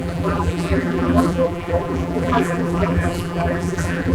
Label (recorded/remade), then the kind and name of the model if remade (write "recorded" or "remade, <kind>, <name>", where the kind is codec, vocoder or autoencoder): remade, vocoder, BigVGAN v2